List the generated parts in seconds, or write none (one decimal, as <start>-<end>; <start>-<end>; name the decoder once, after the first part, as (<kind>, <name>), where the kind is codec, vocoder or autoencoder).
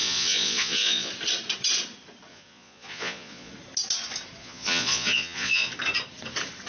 0.0-1.1 (vocoder, Vocos); 2.3-3.5; 4.4-5.7